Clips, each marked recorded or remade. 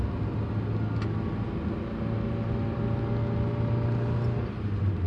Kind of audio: recorded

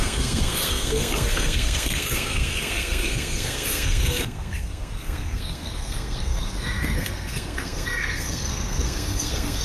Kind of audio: remade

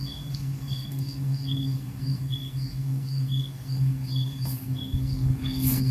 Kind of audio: remade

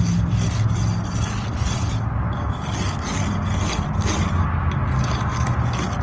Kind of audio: recorded